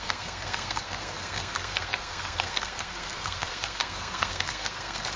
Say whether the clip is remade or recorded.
remade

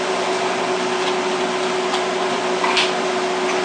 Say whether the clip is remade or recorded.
recorded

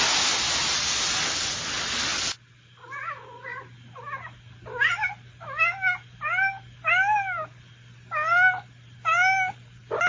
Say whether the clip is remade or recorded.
recorded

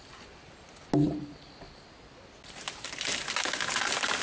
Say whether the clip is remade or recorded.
recorded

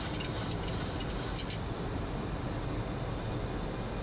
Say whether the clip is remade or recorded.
recorded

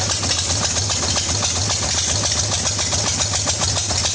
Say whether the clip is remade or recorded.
recorded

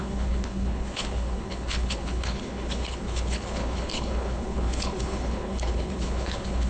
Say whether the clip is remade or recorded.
remade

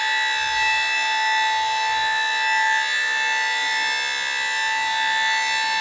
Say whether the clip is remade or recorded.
recorded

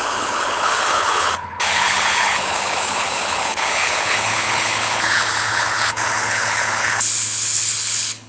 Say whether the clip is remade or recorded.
remade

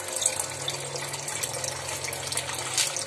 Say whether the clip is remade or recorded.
recorded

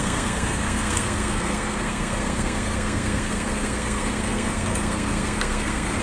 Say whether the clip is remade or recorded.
remade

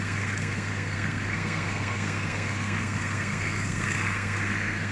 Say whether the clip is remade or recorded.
remade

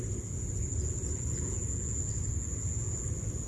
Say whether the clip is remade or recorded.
recorded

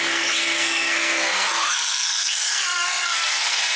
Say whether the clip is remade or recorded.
remade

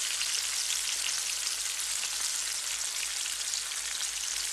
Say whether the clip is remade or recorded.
recorded